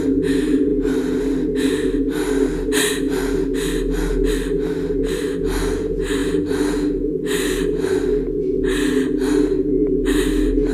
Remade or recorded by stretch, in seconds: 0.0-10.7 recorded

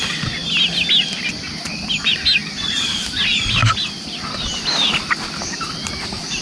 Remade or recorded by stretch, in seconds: 0.0-6.4 recorded